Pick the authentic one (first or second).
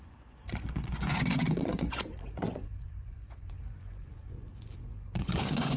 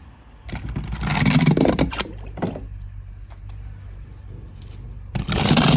second